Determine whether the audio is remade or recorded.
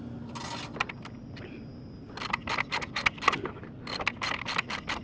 recorded